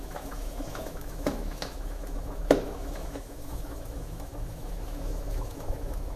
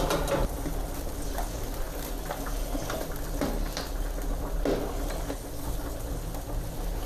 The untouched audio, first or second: second